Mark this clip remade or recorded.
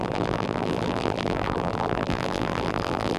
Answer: remade